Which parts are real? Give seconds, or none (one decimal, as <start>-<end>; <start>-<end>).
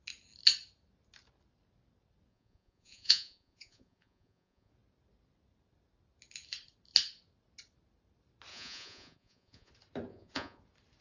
0.0-2.3; 4.7-8.5; 9.7-10.1; 10.6-11.0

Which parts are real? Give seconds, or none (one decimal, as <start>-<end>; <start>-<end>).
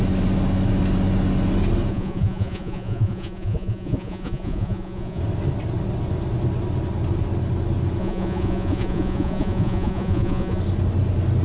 0.0-1.9; 5.2-8.0; 10.6-11.4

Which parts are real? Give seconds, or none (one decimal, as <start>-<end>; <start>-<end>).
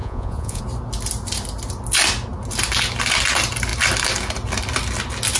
0.6-5.4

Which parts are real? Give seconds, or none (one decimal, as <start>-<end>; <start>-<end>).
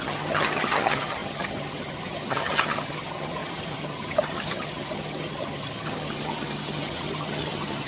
none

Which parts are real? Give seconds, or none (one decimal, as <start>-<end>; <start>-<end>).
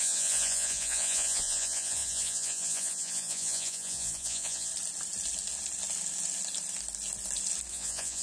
4.7-7.7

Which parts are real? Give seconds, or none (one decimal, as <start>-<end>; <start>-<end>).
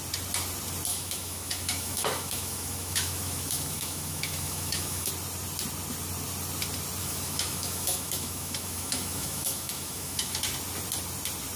0.0-0.9; 5.1-7.0; 10.4-11.6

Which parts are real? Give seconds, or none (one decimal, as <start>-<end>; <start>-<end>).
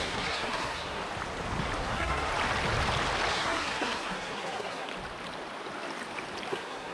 1.0-1.8; 2.3-3.3; 4.9-6.5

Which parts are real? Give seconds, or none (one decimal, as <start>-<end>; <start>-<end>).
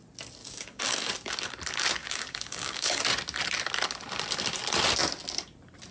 0.0-0.4; 1.1-2.0; 3.0-5.9